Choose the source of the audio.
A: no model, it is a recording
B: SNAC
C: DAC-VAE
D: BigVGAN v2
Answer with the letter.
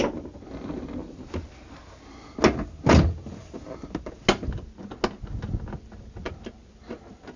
A